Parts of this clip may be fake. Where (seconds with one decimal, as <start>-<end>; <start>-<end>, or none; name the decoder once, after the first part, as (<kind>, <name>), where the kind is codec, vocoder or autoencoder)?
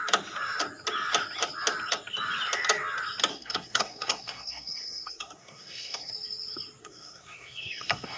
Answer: 3.3-6.1 (codec, SNAC); 6.8-8.2